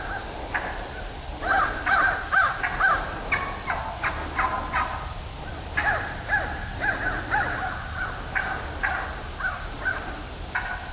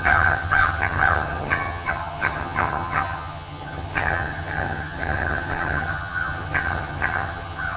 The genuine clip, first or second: first